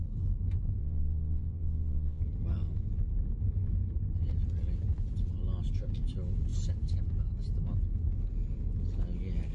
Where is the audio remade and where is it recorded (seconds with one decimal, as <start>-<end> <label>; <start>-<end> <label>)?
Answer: 0.0-0.8 recorded; 0.8-2.2 remade; 2.2-9.5 recorded